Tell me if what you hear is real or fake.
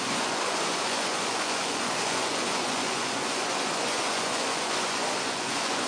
fake